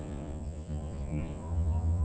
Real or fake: fake